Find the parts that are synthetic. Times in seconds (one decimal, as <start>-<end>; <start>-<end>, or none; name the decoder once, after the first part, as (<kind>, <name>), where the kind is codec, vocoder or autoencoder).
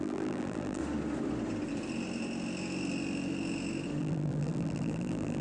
0.0-0.8 (vocoder, BigVGAN v2); 4.0-5.4